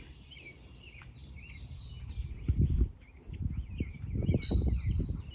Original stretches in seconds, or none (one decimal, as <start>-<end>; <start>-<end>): none